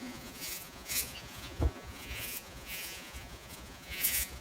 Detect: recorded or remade remade